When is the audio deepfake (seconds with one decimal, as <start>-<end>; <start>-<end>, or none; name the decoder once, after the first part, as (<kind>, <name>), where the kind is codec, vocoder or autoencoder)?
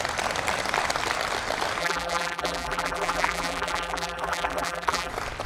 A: 1.8-5.1 (vocoder, BigVGAN v2)